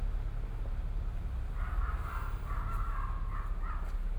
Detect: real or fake real